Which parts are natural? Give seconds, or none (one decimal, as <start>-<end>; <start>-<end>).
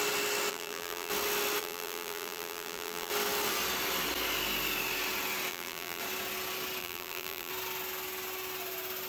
0.0-0.5; 1.1-1.6; 3.1-5.5; 6.0-6.8; 7.5-9.1